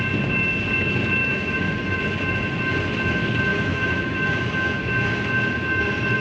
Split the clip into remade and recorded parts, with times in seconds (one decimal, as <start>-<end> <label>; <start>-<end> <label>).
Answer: 0.0-1.2 recorded; 1.2-2.0 remade; 2.0-3.5 recorded; 3.5-4.8 remade; 4.8-6.2 recorded